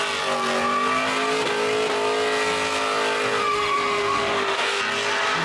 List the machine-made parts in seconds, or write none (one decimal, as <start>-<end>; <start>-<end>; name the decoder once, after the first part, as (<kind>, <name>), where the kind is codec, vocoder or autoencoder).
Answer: 3.4-4.8 (autoencoder, DAC-VAE)